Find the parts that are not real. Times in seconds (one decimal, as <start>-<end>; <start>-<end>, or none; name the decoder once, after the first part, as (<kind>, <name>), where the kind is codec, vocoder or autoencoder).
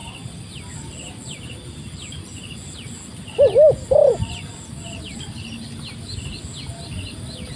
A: none